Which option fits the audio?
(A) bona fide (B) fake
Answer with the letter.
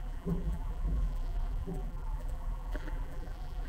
B